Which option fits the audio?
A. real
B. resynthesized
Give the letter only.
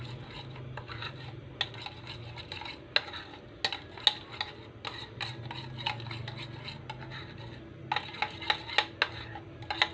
A